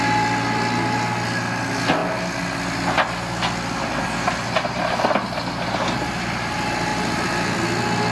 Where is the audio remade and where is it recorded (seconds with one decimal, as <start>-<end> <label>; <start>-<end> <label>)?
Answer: 0.0-6.9 recorded; 6.9-7.5 remade; 7.5-8.1 recorded